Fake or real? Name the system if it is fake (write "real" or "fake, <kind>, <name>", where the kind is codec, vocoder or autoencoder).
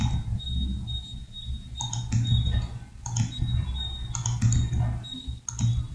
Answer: real